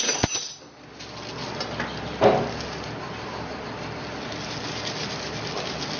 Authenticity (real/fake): real